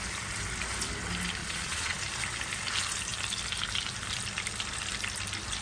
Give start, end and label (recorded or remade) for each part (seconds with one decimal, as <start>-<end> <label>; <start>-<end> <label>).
0.0-1.4 recorded; 1.4-2.0 remade; 2.0-5.6 recorded

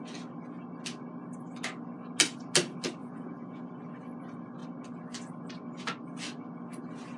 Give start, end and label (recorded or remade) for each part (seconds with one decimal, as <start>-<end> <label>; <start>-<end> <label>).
0.0-3.0 recorded; 3.0-3.7 remade; 3.7-7.2 recorded

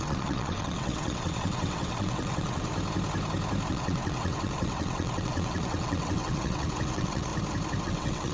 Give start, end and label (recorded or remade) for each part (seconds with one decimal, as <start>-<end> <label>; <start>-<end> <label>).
0.0-2.7 remade; 2.7-3.7 recorded; 3.7-7.3 remade; 7.3-7.8 recorded; 7.8-8.3 remade

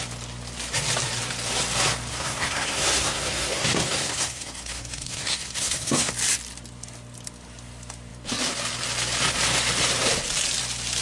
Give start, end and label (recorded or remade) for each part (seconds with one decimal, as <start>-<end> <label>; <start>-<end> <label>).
0.0-2.1 recorded; 2.1-6.1 remade; 6.1-11.0 recorded

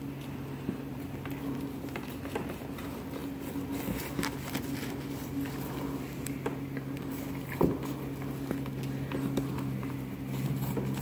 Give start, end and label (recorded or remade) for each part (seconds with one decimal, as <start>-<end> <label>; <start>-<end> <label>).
0.0-11.0 recorded